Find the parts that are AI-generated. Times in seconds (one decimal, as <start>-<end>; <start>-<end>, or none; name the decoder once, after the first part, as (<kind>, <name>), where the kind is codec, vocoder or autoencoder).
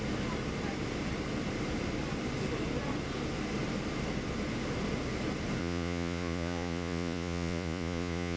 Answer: 5.6-8.4 (vocoder, Vocos)